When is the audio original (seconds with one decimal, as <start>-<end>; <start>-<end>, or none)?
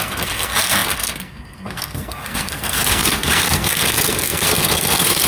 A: none